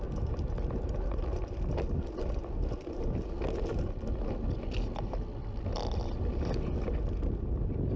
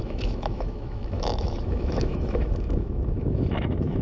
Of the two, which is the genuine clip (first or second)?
first